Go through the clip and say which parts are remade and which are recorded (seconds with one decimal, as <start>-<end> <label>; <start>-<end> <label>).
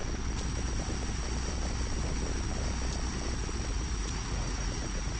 0.0-3.7 recorded; 3.7-5.2 remade